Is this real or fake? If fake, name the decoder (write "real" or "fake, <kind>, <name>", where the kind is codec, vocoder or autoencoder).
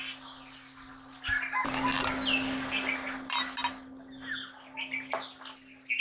real